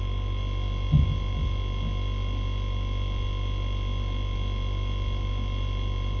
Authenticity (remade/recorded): recorded